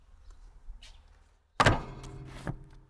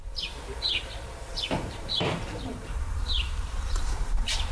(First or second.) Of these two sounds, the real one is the first